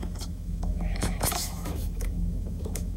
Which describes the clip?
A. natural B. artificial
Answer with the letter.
B